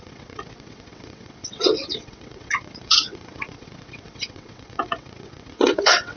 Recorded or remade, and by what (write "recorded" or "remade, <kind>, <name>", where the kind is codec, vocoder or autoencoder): remade, vocoder, WaveNeXt